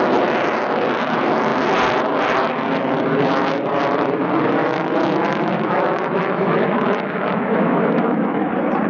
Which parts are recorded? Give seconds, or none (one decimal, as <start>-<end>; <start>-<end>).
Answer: 0.0-4.6; 8.5-8.9